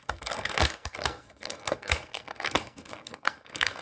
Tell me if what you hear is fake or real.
fake